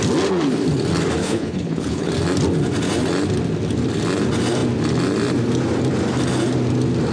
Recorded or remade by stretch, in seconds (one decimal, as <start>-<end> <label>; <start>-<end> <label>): 0.0-1.2 recorded; 1.2-2.1 remade; 2.1-7.1 recorded